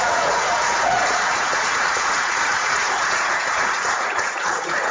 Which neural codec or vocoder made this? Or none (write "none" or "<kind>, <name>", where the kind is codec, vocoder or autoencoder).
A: vocoder, Vocos